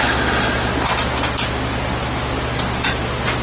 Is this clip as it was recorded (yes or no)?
yes